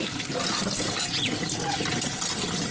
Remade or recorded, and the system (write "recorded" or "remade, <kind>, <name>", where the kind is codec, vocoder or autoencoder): recorded